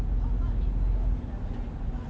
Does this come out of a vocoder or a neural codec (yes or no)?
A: no